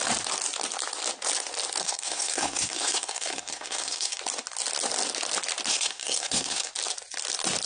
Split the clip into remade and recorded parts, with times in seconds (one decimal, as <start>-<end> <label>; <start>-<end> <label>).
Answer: 0.0-1.8 recorded; 1.8-4.2 remade; 4.2-5.7 recorded; 5.7-6.7 remade; 6.7-7.7 recorded